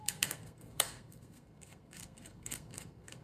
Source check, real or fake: fake